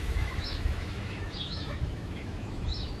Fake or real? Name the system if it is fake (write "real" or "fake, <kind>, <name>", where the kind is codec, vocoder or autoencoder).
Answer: fake, autoencoder, DAC-VAE